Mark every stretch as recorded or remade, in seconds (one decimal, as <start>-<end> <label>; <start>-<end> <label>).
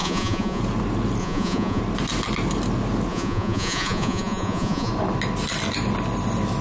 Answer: 0.0-0.6 remade; 0.6-1.2 recorded; 1.2-1.8 remade; 1.8-3.1 recorded; 3.1-4.9 remade; 4.9-6.6 recorded